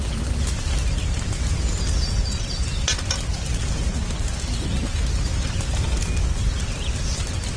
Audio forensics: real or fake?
real